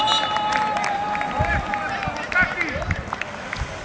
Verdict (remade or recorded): recorded